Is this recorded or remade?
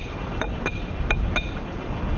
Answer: recorded